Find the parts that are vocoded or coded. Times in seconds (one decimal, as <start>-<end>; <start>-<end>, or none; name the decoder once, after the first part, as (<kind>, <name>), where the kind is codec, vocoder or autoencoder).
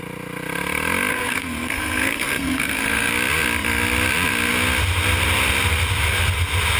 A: 1.1-3.1 (codec, SNAC)